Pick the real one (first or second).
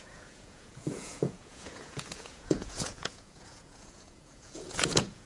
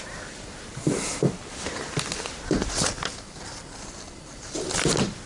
second